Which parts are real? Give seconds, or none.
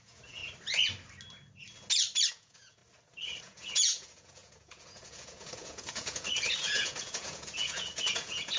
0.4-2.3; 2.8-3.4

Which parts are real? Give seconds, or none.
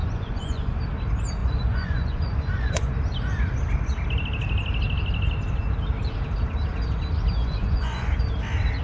0.8-1.4; 2.9-7.4; 8.1-8.8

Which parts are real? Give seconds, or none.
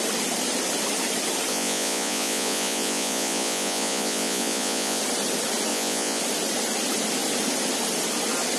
0.0-1.5; 5.0-5.7; 6.2-8.6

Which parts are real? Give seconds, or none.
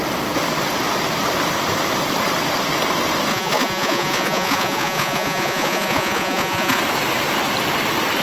0.0-3.3; 6.8-8.2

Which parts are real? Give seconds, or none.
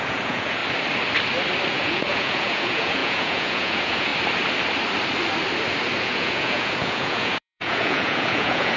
0.6-1.7; 4.1-6.0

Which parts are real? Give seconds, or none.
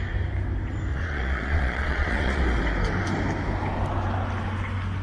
0.0-0.9; 2.4-5.0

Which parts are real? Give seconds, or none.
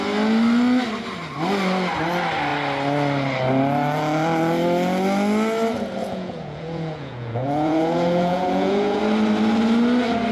0.0-6.0; 9.0-10.3